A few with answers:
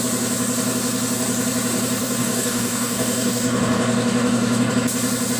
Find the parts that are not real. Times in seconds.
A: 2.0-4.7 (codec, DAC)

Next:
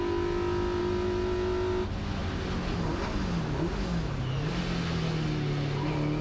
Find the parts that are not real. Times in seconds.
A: none